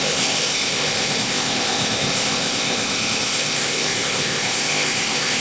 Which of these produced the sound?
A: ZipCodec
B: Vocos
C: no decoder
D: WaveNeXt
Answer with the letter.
A